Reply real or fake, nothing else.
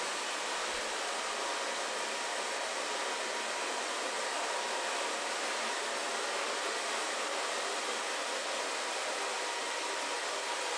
real